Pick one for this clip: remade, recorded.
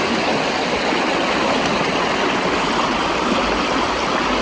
recorded